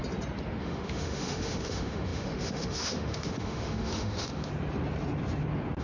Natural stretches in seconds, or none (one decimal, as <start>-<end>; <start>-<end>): 0.0-0.6; 4.5-5.8